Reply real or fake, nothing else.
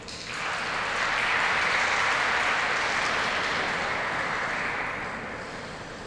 real